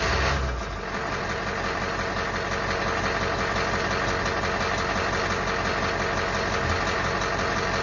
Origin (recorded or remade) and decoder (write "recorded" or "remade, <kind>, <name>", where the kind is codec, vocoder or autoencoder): recorded